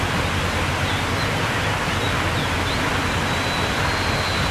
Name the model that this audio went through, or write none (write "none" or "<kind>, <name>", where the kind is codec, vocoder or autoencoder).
none